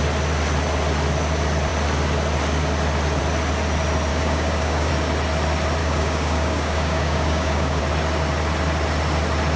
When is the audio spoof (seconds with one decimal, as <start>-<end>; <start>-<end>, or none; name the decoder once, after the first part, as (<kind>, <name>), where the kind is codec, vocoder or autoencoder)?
4.1-4.9 (codec, DAC); 5.8-7.8